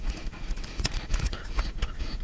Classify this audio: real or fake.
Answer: fake